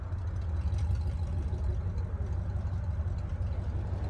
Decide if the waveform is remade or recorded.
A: recorded